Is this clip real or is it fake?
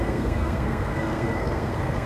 fake